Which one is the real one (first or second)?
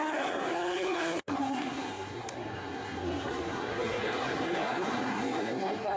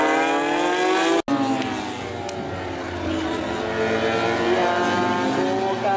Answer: second